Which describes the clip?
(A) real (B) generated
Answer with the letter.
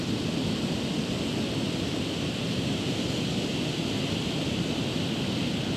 A